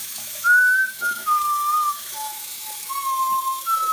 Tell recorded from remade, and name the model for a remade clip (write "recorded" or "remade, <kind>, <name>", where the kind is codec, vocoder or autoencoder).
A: remade, autoencoder, DAC-VAE